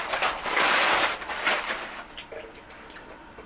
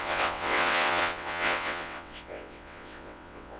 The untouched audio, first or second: first